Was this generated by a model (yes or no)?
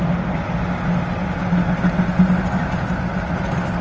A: no